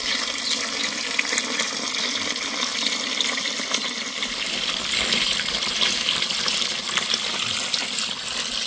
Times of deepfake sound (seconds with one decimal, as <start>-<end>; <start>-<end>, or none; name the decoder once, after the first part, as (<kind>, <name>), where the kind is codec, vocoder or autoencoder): none